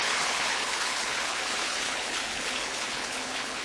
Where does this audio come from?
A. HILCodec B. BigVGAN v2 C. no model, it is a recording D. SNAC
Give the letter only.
A